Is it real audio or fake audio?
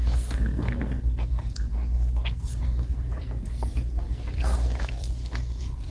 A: fake